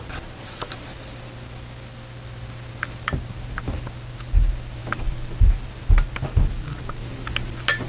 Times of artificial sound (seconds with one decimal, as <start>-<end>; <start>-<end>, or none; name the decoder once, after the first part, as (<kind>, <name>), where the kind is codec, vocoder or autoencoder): 4.8-5.4 (vocoder, BigVGAN v2)